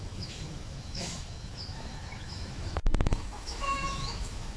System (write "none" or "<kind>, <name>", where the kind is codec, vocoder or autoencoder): autoencoder, DAC-VAE